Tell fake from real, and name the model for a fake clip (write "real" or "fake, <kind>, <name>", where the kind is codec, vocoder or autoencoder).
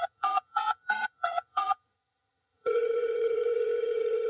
fake, vocoder, HiFi-GAN